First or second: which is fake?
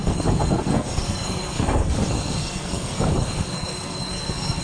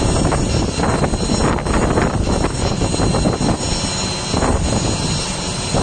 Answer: first